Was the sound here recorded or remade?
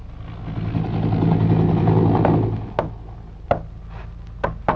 recorded